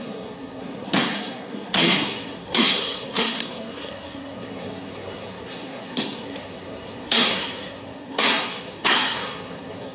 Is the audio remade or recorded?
remade